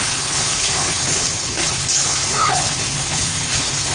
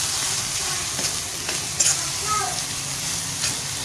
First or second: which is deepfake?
first